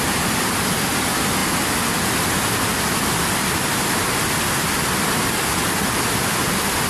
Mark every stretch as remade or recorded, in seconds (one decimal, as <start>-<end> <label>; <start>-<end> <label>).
0.0-6.9 recorded